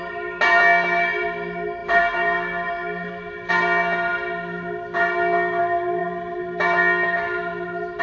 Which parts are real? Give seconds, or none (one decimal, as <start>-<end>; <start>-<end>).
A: 0.0-8.0